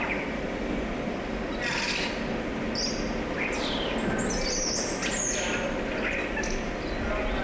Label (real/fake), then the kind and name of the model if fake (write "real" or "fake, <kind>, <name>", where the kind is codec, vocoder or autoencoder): real